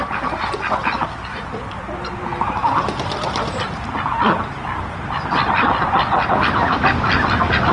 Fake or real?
real